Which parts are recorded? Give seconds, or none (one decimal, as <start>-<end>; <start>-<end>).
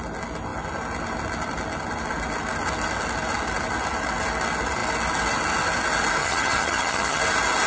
0.0-6.2; 7.2-7.7